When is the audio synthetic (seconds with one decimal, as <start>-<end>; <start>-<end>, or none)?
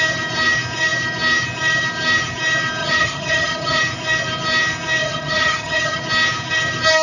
2.8-3.8; 5.0-6.0